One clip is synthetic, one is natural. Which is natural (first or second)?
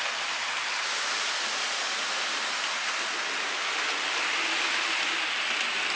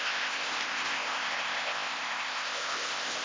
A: first